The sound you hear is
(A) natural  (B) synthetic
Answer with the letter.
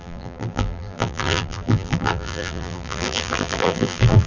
B